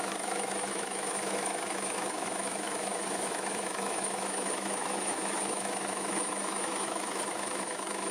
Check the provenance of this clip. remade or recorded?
remade